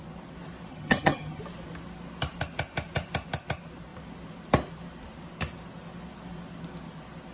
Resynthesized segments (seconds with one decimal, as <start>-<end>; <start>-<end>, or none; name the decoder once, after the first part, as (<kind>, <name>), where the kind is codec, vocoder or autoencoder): 0.7-1.4 (vocoder, HiFi-GAN)

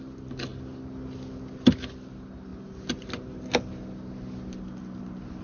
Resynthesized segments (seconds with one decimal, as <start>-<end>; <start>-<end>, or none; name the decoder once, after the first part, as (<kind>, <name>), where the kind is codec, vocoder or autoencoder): none

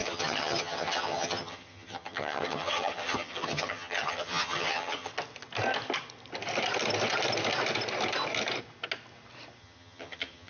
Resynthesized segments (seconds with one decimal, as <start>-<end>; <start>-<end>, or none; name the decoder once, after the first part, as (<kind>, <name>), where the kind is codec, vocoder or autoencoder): 0.0-5.1 (vocoder, HiFi-GAN); 9.6-10.5

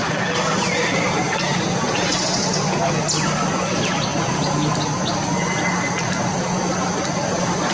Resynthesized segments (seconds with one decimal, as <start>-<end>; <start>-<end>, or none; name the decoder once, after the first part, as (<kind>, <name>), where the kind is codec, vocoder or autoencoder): none

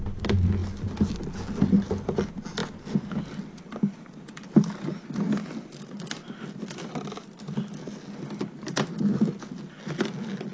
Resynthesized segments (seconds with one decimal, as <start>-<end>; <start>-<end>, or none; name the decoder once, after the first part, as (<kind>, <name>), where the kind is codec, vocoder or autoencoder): none

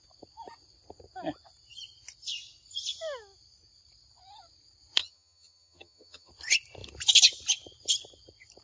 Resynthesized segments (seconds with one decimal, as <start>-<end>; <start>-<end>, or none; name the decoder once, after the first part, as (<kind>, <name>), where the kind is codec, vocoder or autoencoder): 5.0-6.3 (vocoder, HiFi-GAN)